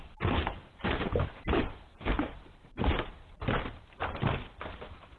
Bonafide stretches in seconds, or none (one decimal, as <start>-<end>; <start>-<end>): 0.0-0.4; 3.5-5.2